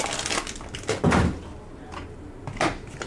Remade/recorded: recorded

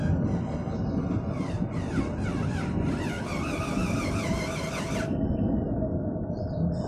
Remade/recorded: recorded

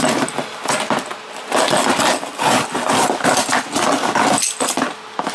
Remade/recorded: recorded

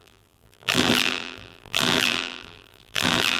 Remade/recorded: remade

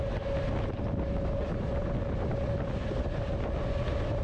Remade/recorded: recorded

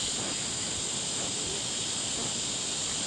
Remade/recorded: recorded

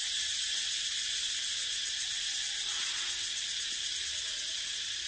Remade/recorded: recorded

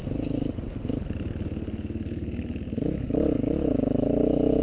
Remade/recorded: recorded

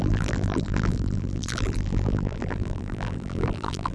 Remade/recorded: remade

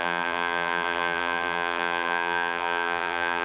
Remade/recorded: remade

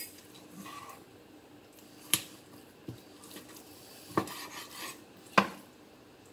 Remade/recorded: recorded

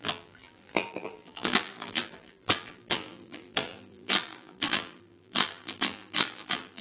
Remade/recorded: remade